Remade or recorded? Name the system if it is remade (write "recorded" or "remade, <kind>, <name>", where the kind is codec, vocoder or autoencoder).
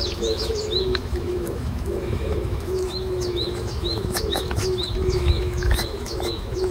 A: remade, autoencoder, DAC-VAE